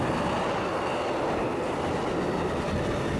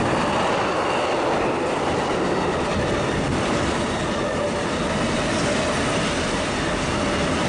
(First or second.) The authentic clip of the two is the first